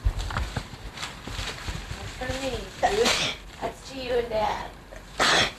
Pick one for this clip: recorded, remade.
remade